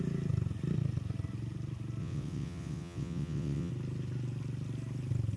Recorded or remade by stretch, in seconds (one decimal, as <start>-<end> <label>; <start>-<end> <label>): 0.0-2.0 recorded; 2.0-3.7 remade; 3.7-5.4 recorded